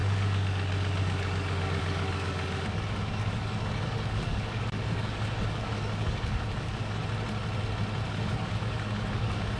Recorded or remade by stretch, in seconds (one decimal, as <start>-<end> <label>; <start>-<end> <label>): 0.0-7.0 remade; 7.0-8.1 recorded; 8.1-9.6 remade